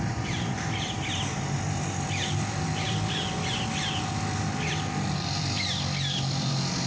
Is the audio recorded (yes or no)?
no